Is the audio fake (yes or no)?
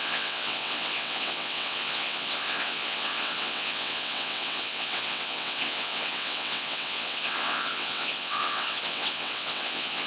yes